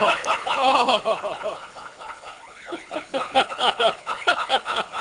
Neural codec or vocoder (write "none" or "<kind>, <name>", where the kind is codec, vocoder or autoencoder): codec, HILCodec